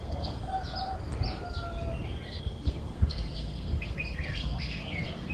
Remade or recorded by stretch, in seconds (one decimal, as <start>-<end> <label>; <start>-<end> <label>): 0.0-0.5 remade; 0.5-2.4 recorded; 2.4-5.3 remade